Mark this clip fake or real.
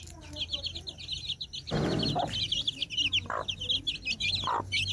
real